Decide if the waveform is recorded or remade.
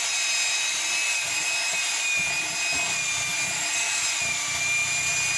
recorded